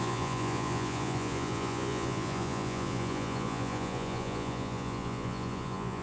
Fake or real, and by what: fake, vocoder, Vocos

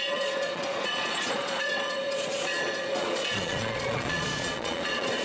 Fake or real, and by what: fake, vocoder, Vocos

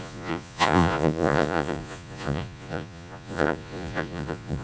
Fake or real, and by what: fake, vocoder, Vocos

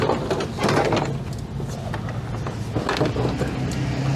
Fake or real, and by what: real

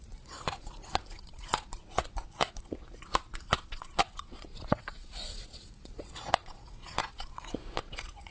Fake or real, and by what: fake, vocoder, Vocos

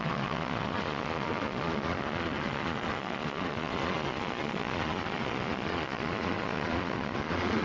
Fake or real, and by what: fake, vocoder, Vocos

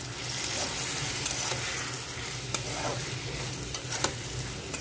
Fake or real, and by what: real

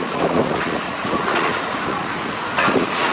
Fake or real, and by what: fake, vocoder, Vocos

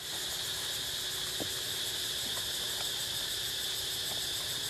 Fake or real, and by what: real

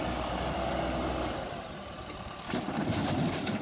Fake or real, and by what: real